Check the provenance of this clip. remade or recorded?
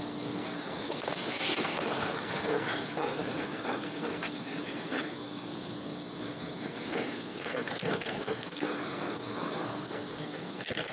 remade